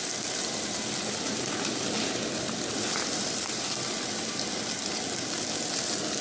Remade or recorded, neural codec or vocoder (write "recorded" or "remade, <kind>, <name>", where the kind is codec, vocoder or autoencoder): remade, vocoder, BigVGAN v2